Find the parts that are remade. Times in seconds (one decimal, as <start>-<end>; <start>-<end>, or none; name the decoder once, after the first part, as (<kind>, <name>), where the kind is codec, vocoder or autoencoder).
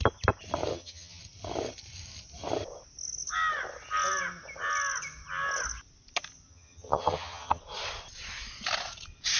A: 0.7-1.2 (vocoder, HiFi-GAN); 6.5-7.6